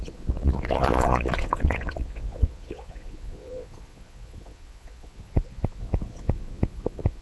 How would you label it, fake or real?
fake